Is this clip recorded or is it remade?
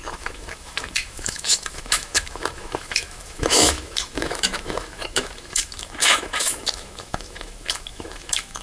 remade